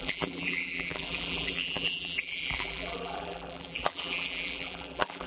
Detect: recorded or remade remade